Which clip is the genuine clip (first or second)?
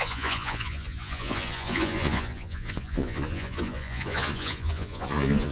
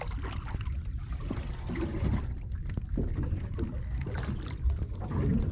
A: second